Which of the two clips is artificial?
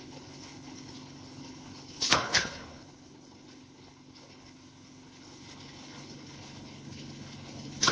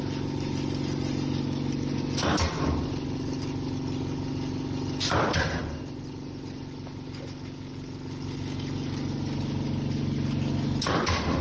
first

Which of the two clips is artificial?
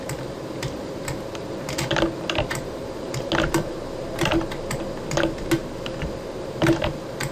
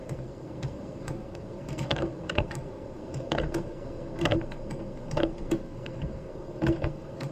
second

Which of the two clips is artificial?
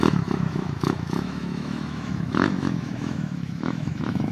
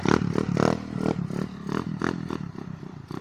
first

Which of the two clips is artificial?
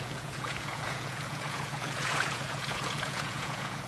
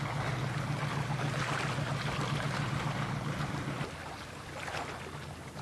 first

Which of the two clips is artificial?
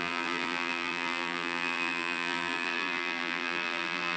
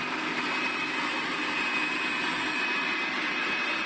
first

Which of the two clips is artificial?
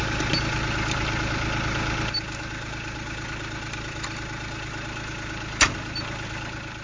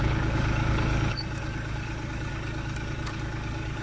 second